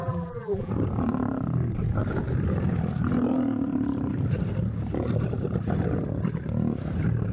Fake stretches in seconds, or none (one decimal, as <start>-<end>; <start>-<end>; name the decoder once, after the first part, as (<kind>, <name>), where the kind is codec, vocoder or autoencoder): 0.0-0.7 (vocoder, BigVGAN v2)